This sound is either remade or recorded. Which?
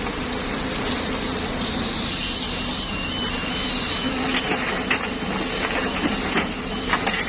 remade